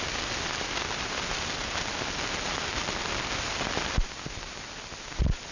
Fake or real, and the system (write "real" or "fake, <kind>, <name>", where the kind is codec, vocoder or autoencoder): real